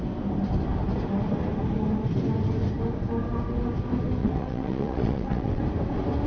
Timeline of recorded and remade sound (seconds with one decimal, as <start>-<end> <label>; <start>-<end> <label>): 0.0-4.2 recorded; 4.2-5.6 remade; 5.6-6.3 recorded